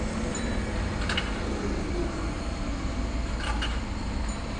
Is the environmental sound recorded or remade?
recorded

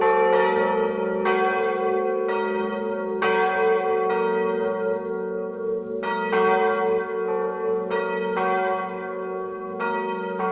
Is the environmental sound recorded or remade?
recorded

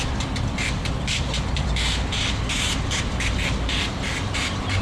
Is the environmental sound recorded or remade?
remade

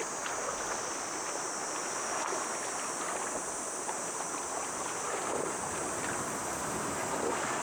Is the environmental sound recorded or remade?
recorded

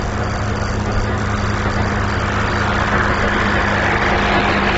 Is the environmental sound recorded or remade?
recorded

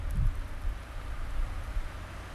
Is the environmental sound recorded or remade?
recorded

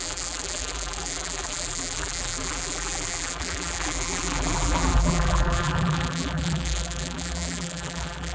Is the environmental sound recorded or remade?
remade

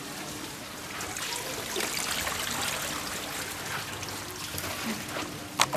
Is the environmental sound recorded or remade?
recorded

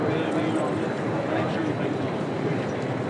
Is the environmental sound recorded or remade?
remade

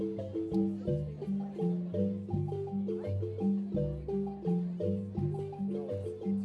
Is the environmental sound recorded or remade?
recorded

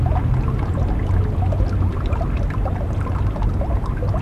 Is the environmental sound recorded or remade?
recorded